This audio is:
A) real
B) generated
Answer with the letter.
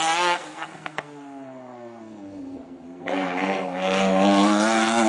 B